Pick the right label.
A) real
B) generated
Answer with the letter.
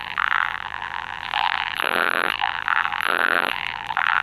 B